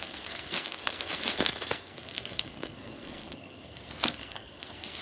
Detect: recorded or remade remade